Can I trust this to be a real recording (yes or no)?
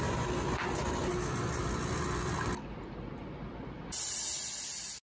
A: yes